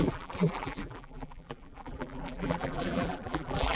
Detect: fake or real fake